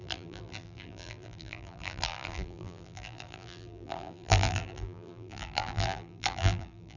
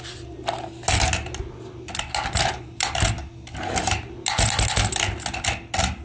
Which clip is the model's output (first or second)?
first